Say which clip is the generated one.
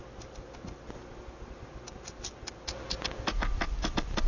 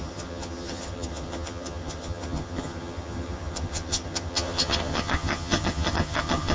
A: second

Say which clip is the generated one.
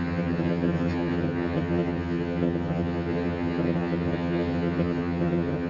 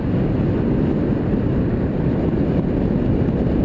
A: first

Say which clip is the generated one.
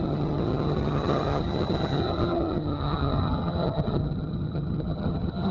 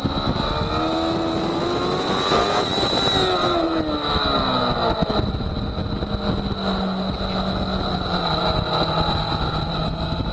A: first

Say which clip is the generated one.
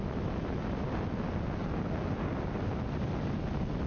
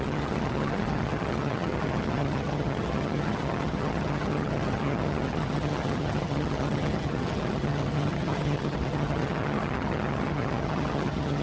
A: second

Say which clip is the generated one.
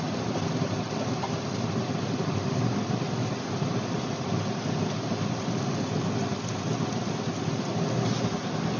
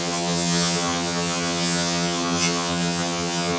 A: second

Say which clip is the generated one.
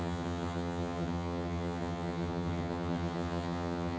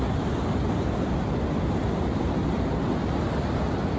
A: first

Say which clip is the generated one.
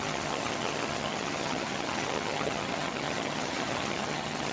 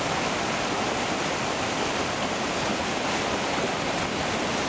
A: first